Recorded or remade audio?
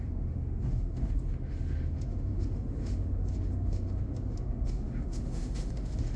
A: remade